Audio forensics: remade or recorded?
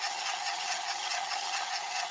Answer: remade